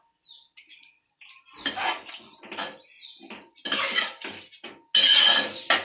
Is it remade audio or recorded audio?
recorded